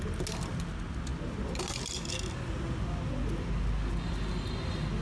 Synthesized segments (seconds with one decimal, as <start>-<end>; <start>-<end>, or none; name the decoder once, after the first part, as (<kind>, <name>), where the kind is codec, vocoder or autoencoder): none